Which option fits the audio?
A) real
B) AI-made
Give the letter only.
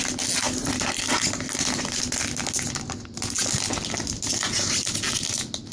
A